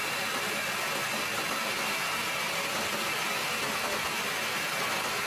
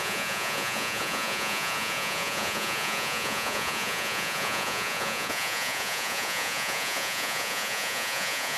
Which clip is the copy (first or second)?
second